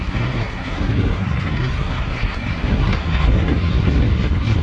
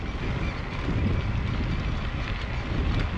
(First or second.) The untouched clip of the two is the second